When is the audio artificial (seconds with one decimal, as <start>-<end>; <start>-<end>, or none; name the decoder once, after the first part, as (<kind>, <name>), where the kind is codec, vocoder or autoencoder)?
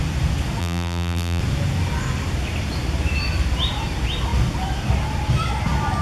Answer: 0.6-1.4 (vocoder, BigVGAN v2)